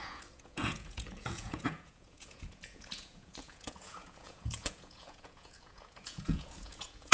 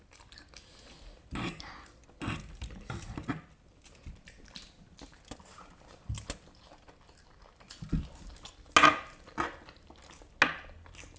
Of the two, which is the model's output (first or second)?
first